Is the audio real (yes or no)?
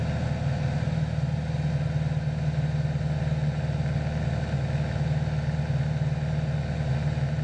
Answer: yes